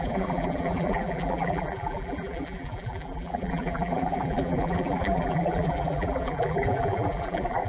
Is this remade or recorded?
remade